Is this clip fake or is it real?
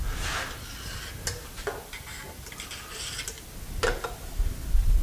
real